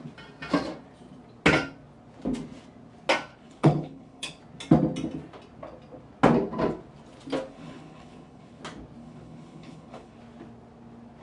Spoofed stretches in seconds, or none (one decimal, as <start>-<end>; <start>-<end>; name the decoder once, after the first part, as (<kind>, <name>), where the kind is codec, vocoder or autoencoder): 3.3-4.4 (codec, HILCodec); 7.5-8.6; 9.0-10.2